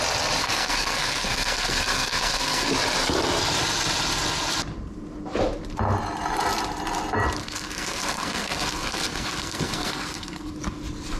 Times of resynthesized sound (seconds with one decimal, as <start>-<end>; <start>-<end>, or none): 0.4-2.7; 7.4-10.5